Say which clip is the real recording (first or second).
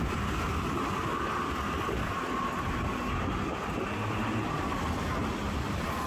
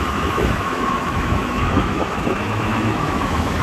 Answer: first